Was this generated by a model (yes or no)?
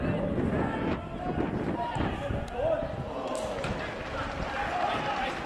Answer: no